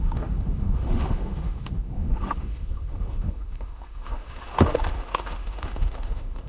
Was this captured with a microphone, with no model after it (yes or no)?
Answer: no